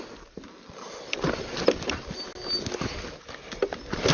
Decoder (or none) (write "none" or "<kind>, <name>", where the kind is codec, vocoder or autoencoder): none